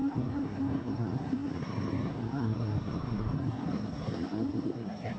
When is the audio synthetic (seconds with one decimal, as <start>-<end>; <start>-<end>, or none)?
0.0-5.2

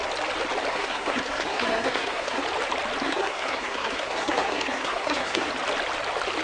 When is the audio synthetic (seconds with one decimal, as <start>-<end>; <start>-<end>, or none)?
0.7-2.4; 3.0-5.5

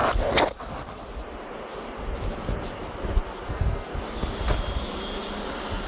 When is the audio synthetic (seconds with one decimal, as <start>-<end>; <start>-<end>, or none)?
3.5-3.9

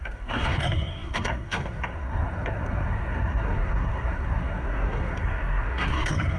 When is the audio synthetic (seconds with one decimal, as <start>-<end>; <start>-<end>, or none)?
0.0-6.4

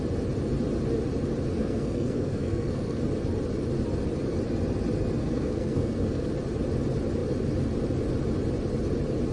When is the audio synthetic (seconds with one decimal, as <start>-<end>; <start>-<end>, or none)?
1.6-3.0; 5.2-6.3

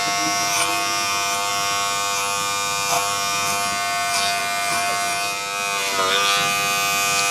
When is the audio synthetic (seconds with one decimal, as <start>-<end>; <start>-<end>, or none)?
none

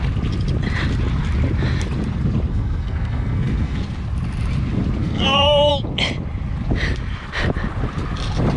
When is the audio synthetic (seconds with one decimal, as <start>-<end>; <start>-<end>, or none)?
2.5-3.8; 5.0-5.7

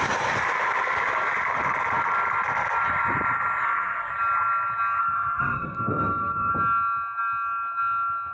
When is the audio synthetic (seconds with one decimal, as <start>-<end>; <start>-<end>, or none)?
3.6-4.1; 5.0-6.5